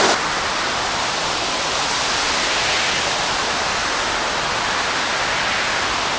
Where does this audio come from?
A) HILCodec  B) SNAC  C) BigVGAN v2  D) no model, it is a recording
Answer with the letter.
D